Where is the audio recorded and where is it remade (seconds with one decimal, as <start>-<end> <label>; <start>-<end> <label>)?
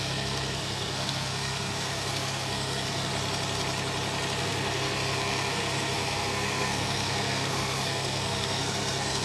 0.0-3.1 remade; 3.1-4.4 recorded; 4.4-9.2 remade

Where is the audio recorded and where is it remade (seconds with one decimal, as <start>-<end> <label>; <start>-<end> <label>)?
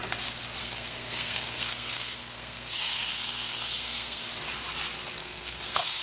0.0-0.6 recorded; 0.6-4.2 remade; 4.2-5.2 recorded; 5.2-6.0 remade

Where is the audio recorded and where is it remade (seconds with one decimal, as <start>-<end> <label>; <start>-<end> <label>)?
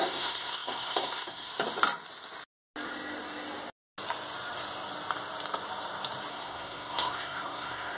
0.0-1.5 remade; 1.5-6.3 recorded; 6.3-8.0 remade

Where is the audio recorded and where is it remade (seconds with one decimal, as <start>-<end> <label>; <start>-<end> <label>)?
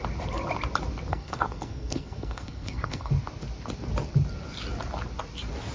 0.0-1.1 recorded; 1.1-3.1 remade; 3.1-5.7 recorded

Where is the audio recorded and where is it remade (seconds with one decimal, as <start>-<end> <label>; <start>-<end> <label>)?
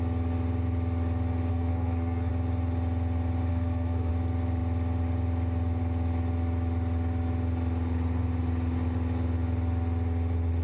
0.0-1.5 recorded; 1.5-2.3 remade; 2.3-3.5 recorded; 3.5-4.1 remade; 4.1-10.6 recorded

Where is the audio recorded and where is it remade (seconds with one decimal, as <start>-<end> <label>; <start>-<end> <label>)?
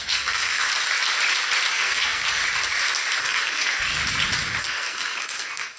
0.0-0.7 remade; 0.7-1.7 recorded; 1.7-2.4 remade; 2.4-3.2 recorded; 3.2-4.0 remade; 4.0-4.6 recorded; 4.6-5.8 remade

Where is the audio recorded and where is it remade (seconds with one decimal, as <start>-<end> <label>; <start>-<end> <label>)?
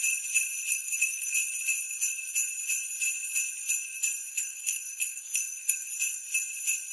0.0-0.7 recorded; 0.7-1.3 remade; 1.3-4.3 recorded; 4.3-5.9 remade; 5.9-6.9 recorded